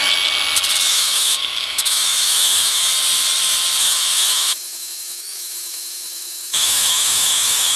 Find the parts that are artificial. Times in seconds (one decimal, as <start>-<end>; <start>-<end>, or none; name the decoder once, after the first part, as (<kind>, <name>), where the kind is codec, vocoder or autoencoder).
0.9-2.8 (autoencoder, DAC-VAE); 3.8-7.8